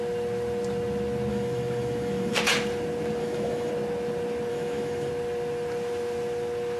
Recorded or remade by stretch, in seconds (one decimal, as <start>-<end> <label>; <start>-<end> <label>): 0.0-1.3 recorded; 1.3-2.3 remade; 2.3-3.2 recorded; 3.2-3.7 remade; 3.7-4.5 recorded; 4.5-5.1 remade; 5.1-6.8 recorded